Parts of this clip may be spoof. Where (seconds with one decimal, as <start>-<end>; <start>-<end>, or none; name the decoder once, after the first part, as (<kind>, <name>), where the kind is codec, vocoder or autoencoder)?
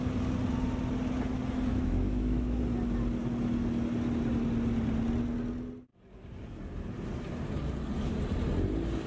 1.7-2.6 (autoencoder, DAC-VAE)